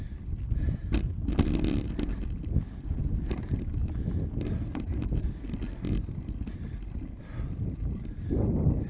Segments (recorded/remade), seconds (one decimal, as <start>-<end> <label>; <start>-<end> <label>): 0.0-8.9 recorded